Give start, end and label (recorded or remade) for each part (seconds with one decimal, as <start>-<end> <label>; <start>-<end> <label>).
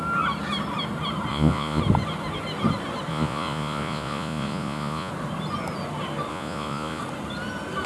0.0-1.3 recorded; 1.3-1.8 remade; 1.8-3.1 recorded; 3.1-5.1 remade; 5.1-6.3 recorded; 6.3-7.0 remade; 7.0-7.9 recorded